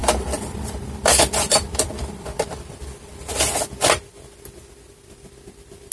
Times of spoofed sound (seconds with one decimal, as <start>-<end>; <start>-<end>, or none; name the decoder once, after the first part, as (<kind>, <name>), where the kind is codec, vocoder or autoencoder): 0.0-3.5 (vocoder, BigVGAN v2)